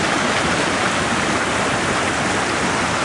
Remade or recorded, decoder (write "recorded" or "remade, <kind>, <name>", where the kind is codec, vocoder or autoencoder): recorded